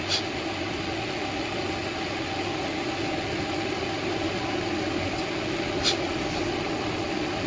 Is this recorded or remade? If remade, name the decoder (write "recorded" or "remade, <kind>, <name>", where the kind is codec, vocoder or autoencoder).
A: recorded